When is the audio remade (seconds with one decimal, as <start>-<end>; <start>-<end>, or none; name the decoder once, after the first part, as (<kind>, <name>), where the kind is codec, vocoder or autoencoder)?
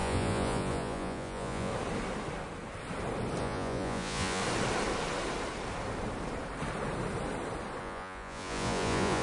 0.0-1.7 (vocoder, Vocos); 3.4-4.4; 7.8-9.2